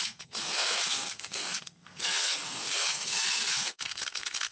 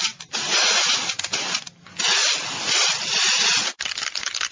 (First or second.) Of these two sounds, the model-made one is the first